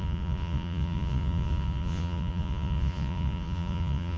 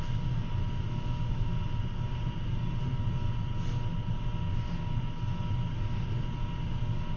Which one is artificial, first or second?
first